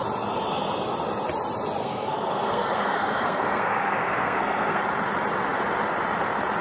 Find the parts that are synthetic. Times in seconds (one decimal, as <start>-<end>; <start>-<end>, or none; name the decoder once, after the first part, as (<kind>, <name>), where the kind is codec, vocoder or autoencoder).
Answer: 1.8-4.8 (codec, SNAC)

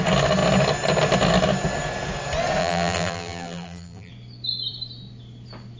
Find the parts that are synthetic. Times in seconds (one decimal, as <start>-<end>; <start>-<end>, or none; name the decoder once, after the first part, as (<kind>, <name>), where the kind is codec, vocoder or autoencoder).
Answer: 2.6-4.1 (vocoder, BigVGAN v2)

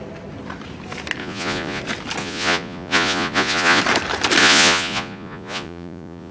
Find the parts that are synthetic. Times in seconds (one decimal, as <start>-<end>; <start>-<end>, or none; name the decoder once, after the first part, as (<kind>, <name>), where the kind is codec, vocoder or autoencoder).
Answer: 1.2-1.8 (vocoder, Vocos); 2.2-3.8; 4.4-6.3

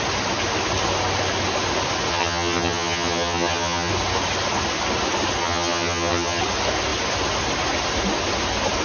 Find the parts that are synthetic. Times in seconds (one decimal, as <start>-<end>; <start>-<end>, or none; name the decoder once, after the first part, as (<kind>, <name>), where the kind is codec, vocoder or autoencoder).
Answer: 2.1-3.9 (vocoder, HiFi-GAN); 5.4-6.4